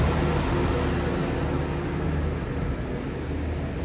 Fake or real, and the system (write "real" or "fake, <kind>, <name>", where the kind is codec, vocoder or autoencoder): real